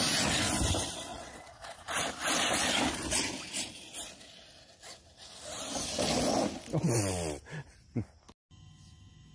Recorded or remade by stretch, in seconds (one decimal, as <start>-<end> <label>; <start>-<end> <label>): 0.0-1.1 recorded; 1.1-1.9 remade; 1.9-9.3 recorded

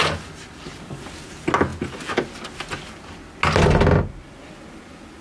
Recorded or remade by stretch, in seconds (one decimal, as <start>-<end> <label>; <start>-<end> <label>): 0.0-5.2 recorded

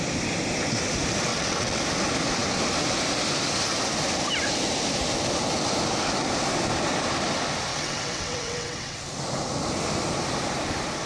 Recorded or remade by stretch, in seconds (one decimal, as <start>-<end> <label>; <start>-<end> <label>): 0.0-1.3 recorded; 1.3-1.8 remade; 1.8-7.7 recorded; 7.7-9.0 remade; 9.0-11.1 recorded

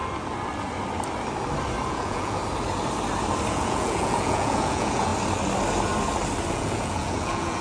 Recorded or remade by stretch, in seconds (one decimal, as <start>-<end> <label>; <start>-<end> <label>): 0.0-1.9 recorded; 1.9-2.4 remade; 2.4-3.5 recorded; 3.5-5.1 remade; 5.1-6.5 recorded; 6.5-7.6 remade